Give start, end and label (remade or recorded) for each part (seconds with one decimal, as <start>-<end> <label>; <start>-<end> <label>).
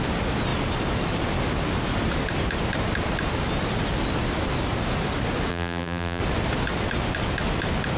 0.0-5.5 recorded; 5.5-6.2 remade; 6.2-8.0 recorded